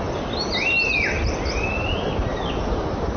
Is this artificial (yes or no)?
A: no